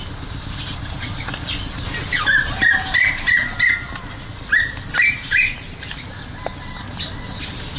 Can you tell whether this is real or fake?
real